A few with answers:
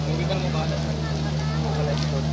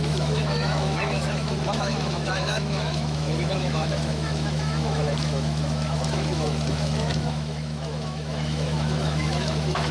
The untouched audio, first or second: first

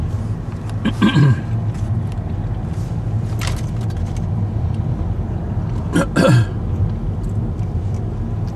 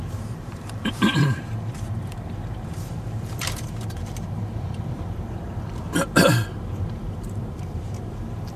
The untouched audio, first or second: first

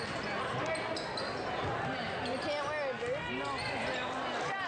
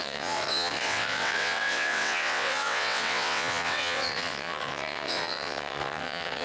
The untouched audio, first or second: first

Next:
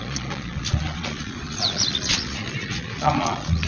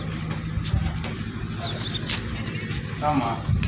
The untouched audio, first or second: second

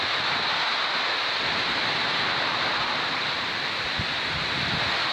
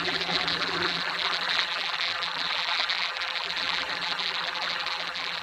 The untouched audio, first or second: first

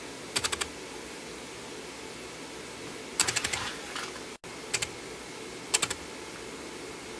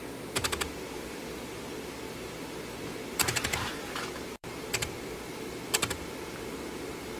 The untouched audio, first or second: first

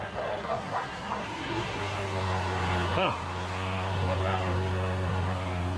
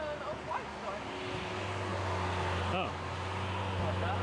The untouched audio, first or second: second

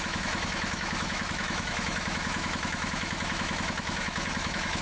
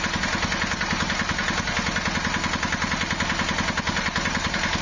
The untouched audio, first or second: second